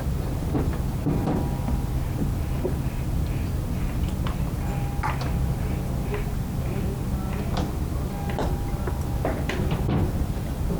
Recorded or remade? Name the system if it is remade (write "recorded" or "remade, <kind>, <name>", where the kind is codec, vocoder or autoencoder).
recorded